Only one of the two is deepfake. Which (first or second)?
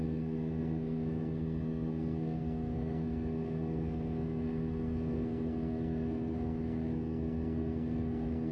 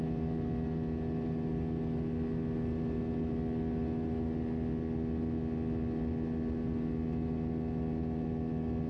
first